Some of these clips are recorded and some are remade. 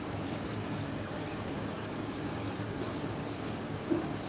remade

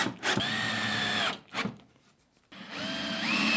recorded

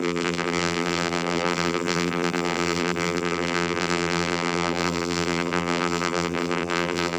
remade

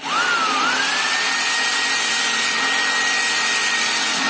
recorded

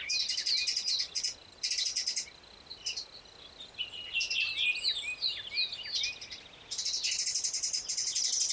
recorded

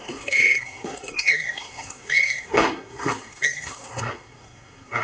remade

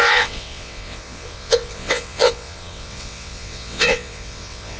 remade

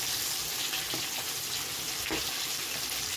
recorded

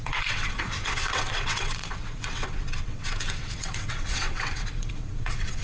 remade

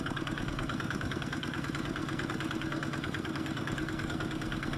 remade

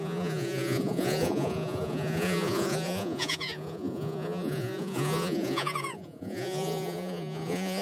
remade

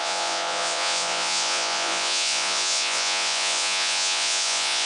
remade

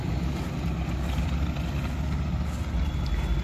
recorded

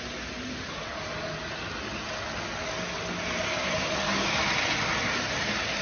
recorded